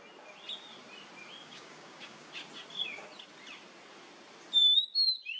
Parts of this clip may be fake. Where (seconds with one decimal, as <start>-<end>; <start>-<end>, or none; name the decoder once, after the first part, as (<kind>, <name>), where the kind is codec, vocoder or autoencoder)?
1.4-2.3 (codec, DAC)